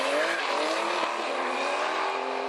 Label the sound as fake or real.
real